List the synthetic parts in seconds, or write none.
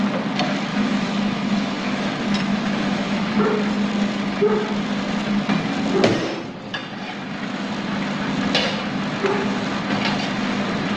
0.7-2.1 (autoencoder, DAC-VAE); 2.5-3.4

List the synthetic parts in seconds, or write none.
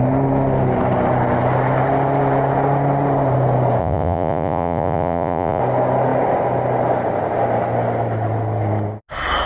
3.8-5.6 (vocoder, Vocos)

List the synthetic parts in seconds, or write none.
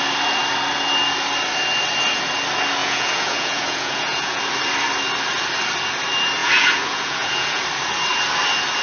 2.8-4.4 (vocoder, Vocos); 6.4-7.6